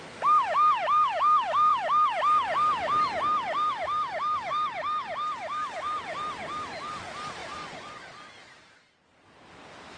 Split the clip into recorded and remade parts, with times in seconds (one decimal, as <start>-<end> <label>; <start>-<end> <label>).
0.0-7.4 recorded; 7.4-8.1 remade; 8.1-10.0 recorded